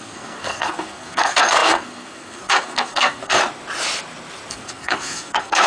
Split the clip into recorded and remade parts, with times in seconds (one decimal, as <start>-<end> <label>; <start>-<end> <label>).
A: 0.0-3.4 remade; 3.4-4.5 recorded; 4.5-5.7 remade